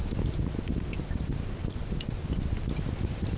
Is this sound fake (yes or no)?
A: no